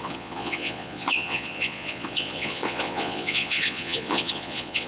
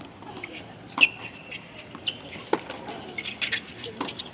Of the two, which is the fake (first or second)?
first